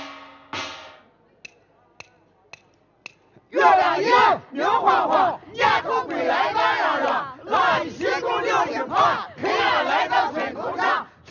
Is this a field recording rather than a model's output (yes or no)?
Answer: yes